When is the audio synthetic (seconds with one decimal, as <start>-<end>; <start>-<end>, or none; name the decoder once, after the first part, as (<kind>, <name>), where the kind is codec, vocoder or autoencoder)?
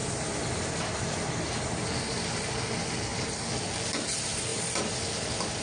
0.0-1.8 (vocoder, BigVGAN v2)